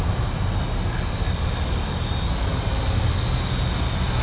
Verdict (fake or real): real